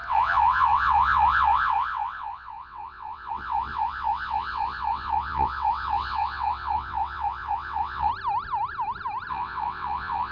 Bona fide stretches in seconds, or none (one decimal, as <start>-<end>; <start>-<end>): 8.1-9.3